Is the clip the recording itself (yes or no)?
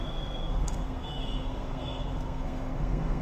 no